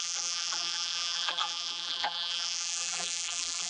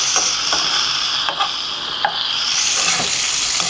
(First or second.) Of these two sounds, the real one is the second